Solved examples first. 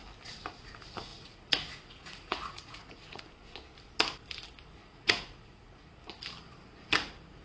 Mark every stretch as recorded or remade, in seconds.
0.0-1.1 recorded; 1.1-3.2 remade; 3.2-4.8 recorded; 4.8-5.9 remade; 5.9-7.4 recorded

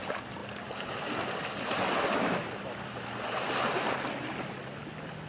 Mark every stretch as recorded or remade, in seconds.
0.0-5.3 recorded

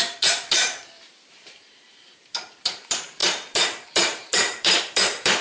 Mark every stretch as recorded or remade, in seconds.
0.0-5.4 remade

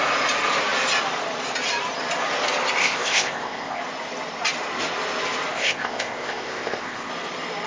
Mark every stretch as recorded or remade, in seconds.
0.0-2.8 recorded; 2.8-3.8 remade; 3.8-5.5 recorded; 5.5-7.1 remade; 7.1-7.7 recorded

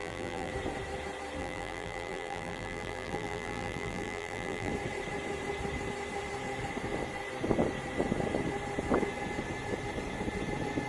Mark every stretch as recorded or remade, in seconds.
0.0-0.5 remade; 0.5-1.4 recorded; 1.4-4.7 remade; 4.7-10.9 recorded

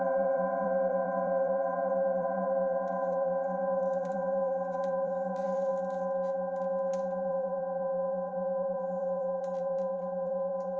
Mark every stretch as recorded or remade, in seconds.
0.0-5.7 remade; 5.7-7.3 recorded; 7.3-10.8 remade

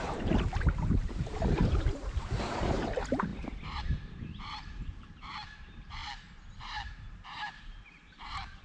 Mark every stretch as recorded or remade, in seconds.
0.0-3.3 remade; 3.3-3.8 recorded; 3.8-6.0 remade; 6.0-6.5 recorded; 6.5-8.6 remade

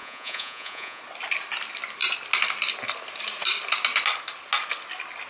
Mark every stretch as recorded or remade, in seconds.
0.0-1.0 remade; 1.0-5.3 recorded